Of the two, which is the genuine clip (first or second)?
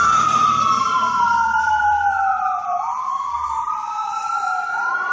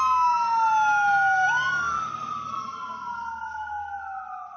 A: second